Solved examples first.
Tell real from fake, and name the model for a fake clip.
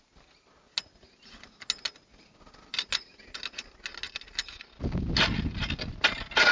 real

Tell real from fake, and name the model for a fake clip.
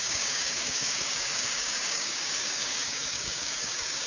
fake, codec, DAC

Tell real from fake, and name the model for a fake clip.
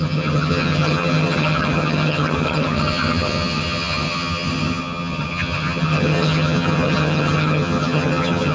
fake, vocoder, HiFi-GAN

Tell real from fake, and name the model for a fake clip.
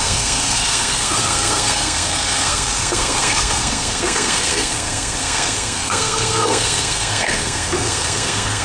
fake, codec, SNAC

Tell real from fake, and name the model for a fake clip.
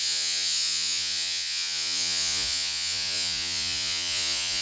fake, vocoder, Vocos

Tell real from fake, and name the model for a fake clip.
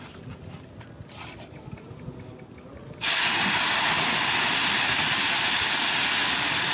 real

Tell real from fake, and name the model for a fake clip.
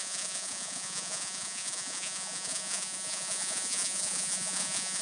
fake, vocoder, Vocos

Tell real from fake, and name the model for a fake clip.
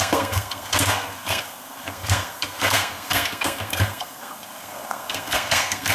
fake, codec, SNAC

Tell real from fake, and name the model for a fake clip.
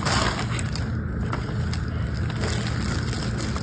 real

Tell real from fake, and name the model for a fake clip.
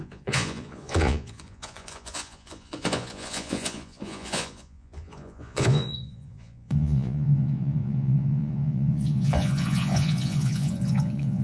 fake, vocoder, Vocos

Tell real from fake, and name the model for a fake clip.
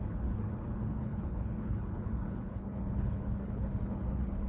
fake, codec, HILCodec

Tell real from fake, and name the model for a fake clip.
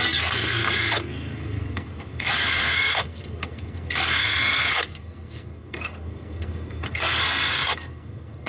fake, codec, SNAC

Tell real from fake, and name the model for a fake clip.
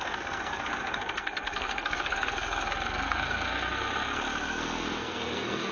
fake, codec, SNAC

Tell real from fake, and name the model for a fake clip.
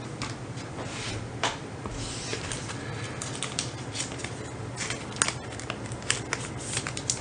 real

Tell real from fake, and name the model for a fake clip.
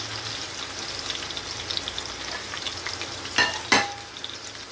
real